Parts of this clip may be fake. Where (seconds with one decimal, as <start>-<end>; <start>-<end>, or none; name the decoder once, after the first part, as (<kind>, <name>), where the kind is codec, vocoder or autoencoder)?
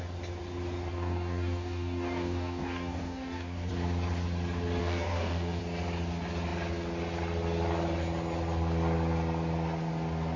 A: 0.9-3.7 (codec, DAC); 4.8-5.6